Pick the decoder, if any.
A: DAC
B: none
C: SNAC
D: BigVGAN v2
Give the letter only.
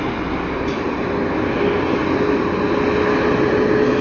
B